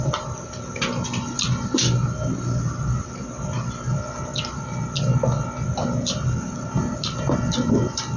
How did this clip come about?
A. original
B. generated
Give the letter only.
A